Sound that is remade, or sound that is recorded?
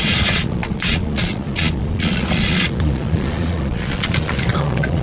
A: remade